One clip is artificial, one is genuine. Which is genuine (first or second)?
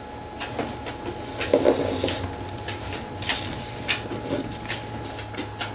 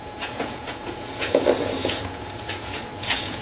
first